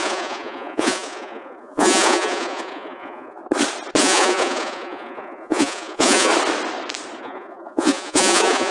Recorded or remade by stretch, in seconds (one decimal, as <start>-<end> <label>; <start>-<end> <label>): 0.0-3.4 remade; 3.4-4.0 recorded; 4.0-6.3 remade; 6.3-7.2 recorded; 7.2-8.7 remade